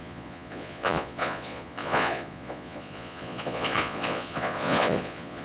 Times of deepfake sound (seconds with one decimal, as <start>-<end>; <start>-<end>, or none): 0.0-5.4